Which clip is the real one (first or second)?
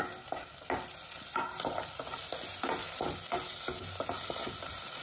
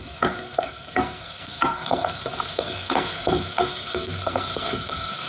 first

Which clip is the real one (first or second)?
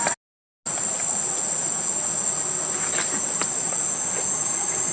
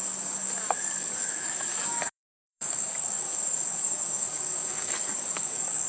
first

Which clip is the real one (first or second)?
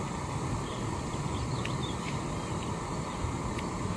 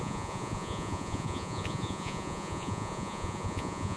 first